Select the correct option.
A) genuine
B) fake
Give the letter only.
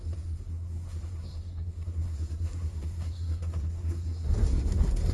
B